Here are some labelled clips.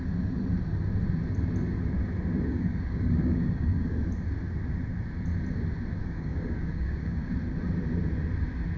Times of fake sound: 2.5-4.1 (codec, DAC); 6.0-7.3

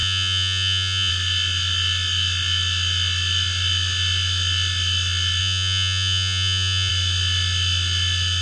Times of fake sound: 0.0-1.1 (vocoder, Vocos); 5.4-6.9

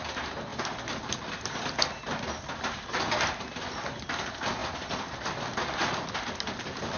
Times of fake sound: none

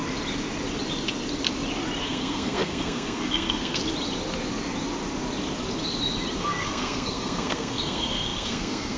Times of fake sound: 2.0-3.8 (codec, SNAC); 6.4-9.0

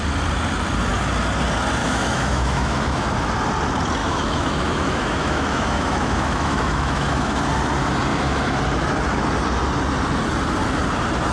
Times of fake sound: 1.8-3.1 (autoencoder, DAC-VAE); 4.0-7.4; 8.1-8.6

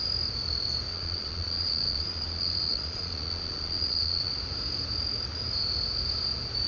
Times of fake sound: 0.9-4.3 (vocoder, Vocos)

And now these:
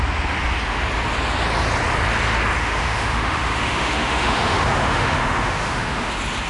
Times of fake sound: 2.6-6.1 (autoencoder, DAC-VAE)

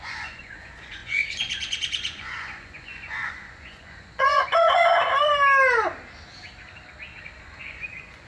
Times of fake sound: 0.0-4.9 (vocoder, Vocos); 7.4-8.3